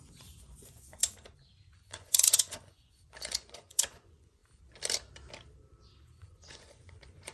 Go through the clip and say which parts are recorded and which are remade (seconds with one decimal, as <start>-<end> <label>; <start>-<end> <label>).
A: 0.0-1.0 remade; 1.0-1.7 recorded; 1.7-4.4 remade; 4.4-6.0 recorded; 6.0-7.3 remade